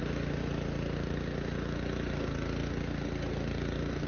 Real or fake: real